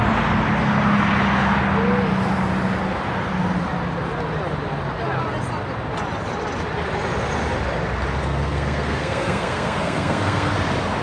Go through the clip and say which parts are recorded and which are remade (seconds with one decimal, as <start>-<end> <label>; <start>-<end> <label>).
0.0-8.2 recorded; 8.2-10.5 remade; 10.5-11.0 recorded